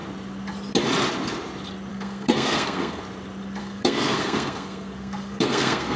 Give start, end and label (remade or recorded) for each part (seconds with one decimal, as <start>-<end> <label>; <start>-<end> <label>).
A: 0.0-1.9 recorded; 1.9-3.0 remade; 3.0-3.6 recorded; 3.6-6.0 remade